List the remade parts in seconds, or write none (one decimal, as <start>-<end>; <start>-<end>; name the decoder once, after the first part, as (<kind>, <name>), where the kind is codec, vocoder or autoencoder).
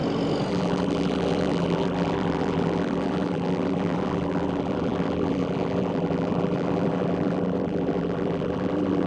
0.5-9.1 (vocoder, BigVGAN v2)